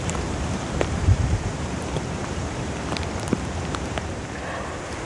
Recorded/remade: remade